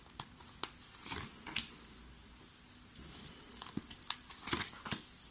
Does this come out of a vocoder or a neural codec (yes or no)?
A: no